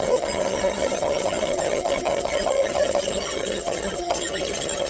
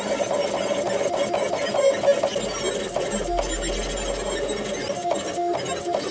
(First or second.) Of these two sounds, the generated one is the first